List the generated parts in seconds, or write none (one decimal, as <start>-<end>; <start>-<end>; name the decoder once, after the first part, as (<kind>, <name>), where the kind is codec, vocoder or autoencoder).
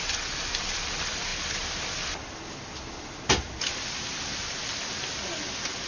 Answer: none